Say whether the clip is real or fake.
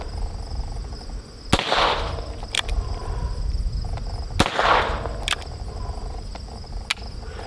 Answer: real